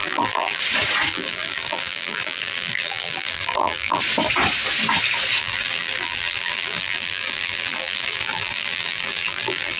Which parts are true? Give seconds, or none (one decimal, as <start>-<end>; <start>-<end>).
0.6-1.1; 4.0-5.4